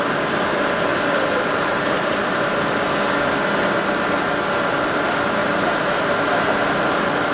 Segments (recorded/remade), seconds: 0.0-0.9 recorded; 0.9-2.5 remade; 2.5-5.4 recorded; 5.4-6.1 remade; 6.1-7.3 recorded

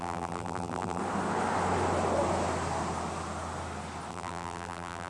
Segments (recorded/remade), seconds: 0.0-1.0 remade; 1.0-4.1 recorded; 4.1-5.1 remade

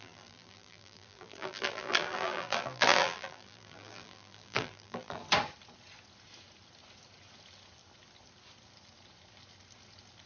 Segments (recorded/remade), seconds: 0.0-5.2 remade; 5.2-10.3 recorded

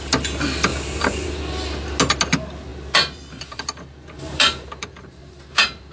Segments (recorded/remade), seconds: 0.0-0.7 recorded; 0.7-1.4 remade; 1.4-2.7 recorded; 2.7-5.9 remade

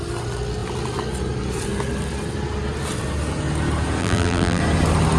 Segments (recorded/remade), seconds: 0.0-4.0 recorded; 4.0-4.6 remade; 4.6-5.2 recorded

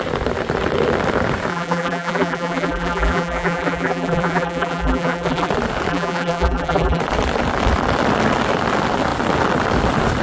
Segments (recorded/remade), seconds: 0.0-1.5 recorded; 1.5-5.5 remade; 5.5-5.9 recorded; 5.9-7.0 remade; 7.0-10.2 recorded

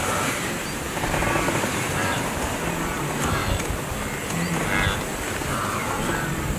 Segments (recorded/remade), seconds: 0.0-3.4 remade; 3.4-5.0 recorded; 5.0-6.6 remade